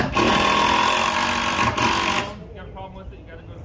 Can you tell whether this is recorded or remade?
recorded